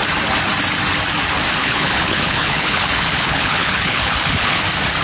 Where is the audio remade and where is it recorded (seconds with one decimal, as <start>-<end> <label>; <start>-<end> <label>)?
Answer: 0.0-1.6 recorded; 1.6-4.6 remade; 4.6-5.0 recorded